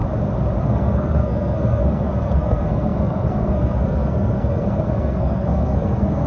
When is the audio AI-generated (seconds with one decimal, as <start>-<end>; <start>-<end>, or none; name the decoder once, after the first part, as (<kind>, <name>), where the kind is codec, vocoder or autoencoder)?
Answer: 0.6-6.3 (codec, SNAC)